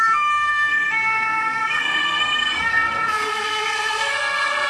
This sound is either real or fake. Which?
fake